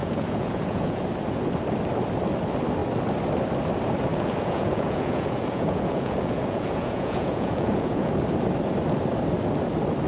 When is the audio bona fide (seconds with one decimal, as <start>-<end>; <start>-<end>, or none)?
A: 1.0-4.1; 8.1-10.1